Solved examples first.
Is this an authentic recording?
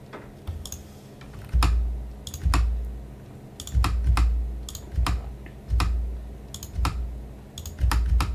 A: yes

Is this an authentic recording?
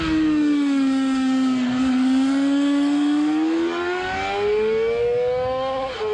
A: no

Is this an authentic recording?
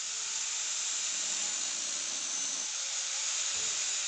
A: yes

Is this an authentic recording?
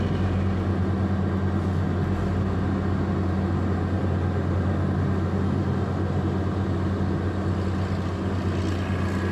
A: yes